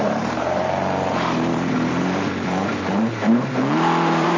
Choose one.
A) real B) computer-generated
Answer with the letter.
B